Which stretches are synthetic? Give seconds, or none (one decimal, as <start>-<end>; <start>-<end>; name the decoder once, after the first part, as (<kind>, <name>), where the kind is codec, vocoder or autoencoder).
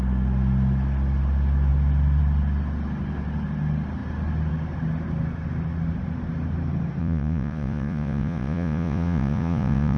7.0-10.0 (vocoder, Vocos)